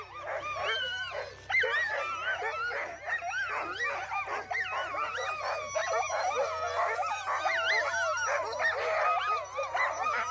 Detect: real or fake real